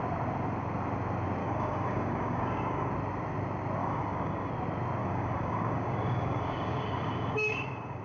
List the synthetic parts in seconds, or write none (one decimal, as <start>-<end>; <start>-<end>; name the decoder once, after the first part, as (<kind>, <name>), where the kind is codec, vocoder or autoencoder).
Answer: 1.4-2.9 (codec, DAC); 3.8-4.5; 5.0-8.0